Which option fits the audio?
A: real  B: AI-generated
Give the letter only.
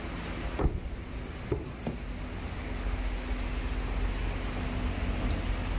A